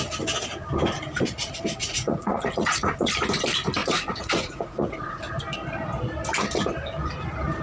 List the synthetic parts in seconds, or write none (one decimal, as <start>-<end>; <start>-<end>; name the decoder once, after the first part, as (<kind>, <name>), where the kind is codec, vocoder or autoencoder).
1.8-3.1 (vocoder, Vocos); 3.8-5.2